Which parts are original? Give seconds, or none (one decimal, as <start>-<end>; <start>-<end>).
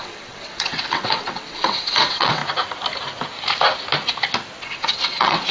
2.4-4.6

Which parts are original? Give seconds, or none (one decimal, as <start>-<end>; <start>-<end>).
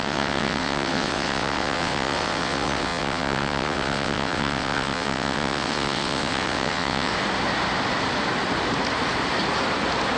7.1-10.2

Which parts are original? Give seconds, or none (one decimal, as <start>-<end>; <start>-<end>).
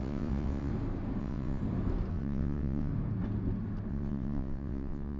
0.7-1.2; 1.6-2.1; 2.9-3.9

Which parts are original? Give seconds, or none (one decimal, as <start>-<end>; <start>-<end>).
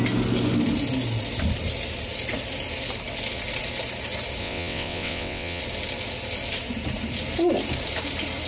0.0-4.4; 5.6-8.5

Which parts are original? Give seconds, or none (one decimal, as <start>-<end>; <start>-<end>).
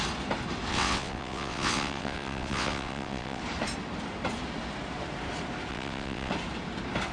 0.0-0.7; 3.4-5.7; 6.3-7.1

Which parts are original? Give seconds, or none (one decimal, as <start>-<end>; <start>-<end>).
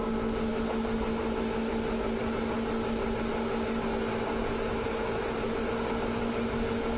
0.0-7.0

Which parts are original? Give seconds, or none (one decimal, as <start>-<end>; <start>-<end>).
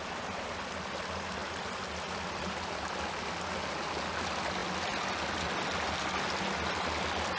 0.0-7.4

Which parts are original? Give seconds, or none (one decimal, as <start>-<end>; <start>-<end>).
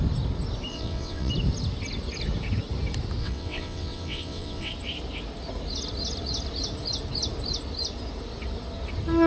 0.0-0.7; 1.3-3.2; 4.7-9.3